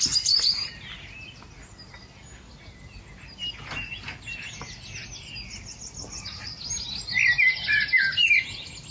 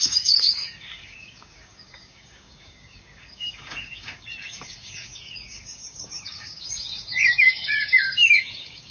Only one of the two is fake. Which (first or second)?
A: second